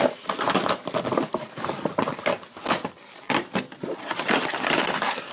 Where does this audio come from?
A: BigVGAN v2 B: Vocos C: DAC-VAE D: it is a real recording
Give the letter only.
D